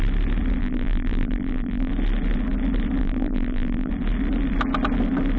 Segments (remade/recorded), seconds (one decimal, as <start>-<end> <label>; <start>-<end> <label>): 0.0-0.6 recorded; 0.6-1.9 remade; 1.9-3.0 recorded; 3.0-3.9 remade; 3.9-5.4 recorded